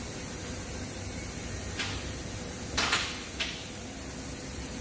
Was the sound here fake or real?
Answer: real